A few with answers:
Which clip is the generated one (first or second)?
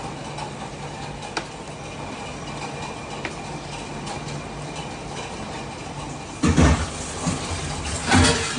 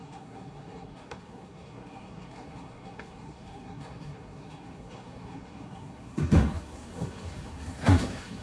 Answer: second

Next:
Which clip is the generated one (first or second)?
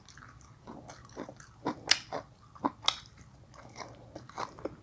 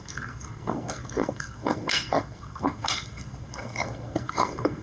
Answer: second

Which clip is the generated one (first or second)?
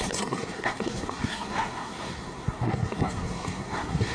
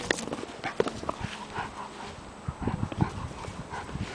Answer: first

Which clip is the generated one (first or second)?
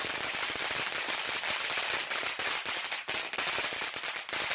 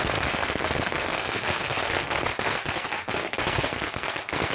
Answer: second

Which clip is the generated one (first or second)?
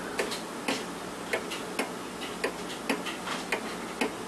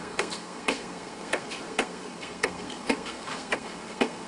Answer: second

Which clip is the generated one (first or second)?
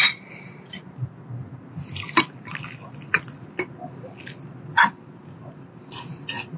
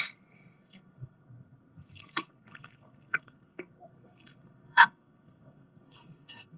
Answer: second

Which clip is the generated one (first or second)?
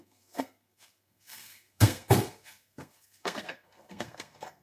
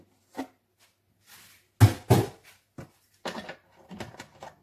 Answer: first